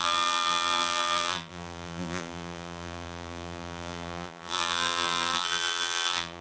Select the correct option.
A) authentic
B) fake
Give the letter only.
B